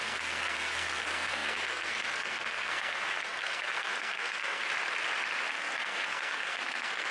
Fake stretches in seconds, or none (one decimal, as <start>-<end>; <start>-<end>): 0.0-4.6; 5.5-7.1

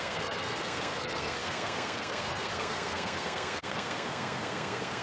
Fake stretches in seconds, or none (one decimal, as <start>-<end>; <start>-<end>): 0.0-5.0

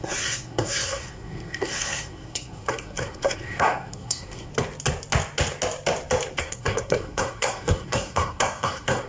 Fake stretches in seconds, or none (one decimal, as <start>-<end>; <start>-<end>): 0.0-4.5; 6.4-9.1

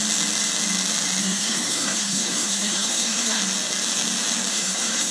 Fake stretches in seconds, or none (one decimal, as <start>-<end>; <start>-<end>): 1.2-3.4; 4.5-5.1